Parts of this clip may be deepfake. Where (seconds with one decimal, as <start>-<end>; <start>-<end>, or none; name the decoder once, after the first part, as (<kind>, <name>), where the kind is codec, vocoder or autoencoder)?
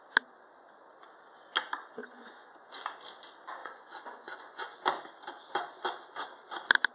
2.0-2.7 (vocoder, Vocos); 3.6-4.8